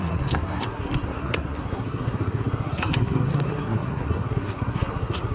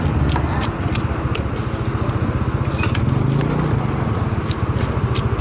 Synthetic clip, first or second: first